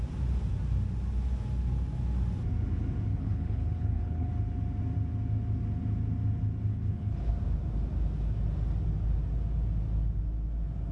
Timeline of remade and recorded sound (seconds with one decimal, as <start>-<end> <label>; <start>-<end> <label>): 0.0-3.1 recorded; 3.1-4.3 remade; 4.3-6.7 recorded; 6.7-7.3 remade; 7.3-10.9 recorded